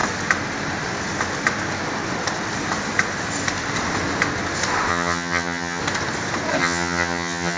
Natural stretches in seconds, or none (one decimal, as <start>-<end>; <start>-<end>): 0.0-4.9; 5.8-6.6

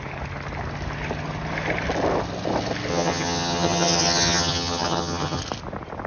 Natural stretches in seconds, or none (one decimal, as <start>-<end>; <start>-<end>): 0.0-2.9; 5.4-6.1

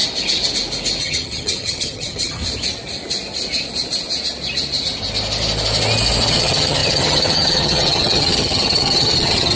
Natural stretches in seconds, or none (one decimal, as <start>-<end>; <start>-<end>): 0.0-1.0; 2.4-6.3

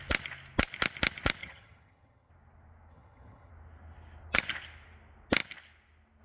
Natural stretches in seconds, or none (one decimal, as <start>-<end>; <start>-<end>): 0.0-1.4; 2.3-2.9; 3.5-6.2